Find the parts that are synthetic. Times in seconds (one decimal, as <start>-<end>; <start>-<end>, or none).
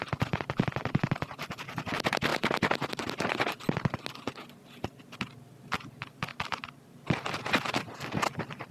6.3-7.2